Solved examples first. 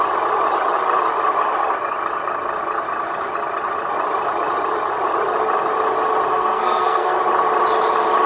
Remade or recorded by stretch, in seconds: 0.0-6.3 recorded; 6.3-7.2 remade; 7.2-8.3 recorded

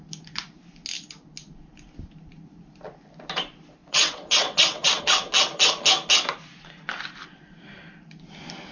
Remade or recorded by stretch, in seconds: 0.0-3.8 recorded; 3.8-5.0 remade; 5.0-8.7 recorded

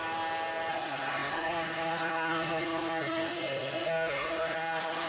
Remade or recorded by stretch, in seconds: 0.0-0.7 recorded; 0.7-5.1 remade

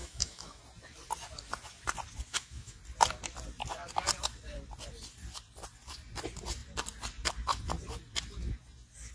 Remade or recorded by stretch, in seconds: 0.0-0.6 remade; 0.6-2.3 recorded; 2.3-2.8 remade; 2.8-9.1 recorded

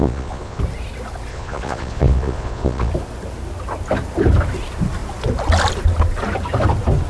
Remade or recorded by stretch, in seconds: 0.0-0.6 remade; 0.6-1.3 recorded; 1.3-2.9 remade; 2.9-7.1 recorded

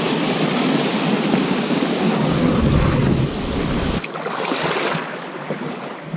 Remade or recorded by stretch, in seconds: 0.0-1.4 recorded; 1.4-2.5 remade; 2.5-6.2 recorded

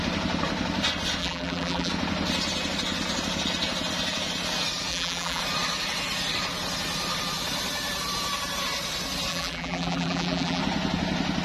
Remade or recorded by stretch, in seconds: 0.0-1.2 recorded; 1.2-1.9 remade; 1.9-4.9 recorded; 4.9-5.4 remade; 5.4-9.3 recorded; 9.3-10.6 remade; 10.6-11.4 recorded

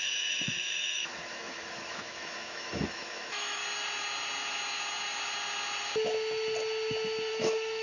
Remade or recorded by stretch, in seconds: 0.0-3.6 remade; 3.6-7.3 recorded; 7.3-7.8 remade